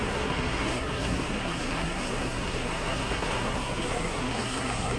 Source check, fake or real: fake